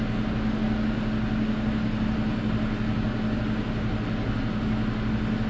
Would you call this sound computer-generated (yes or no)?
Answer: no